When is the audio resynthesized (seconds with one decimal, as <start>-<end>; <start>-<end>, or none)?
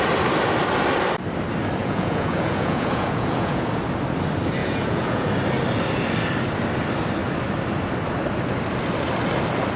1.8-3.8; 4.6-5.3